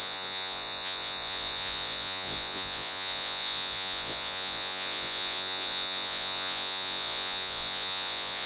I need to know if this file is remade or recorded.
remade